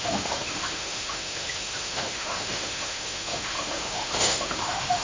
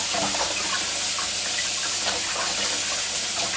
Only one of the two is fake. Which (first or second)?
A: first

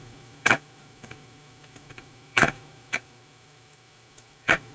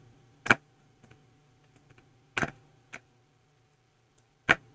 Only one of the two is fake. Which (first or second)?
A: first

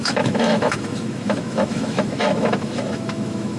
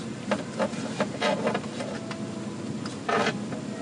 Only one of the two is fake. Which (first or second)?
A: first